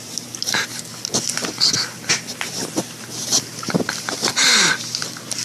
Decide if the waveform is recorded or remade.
recorded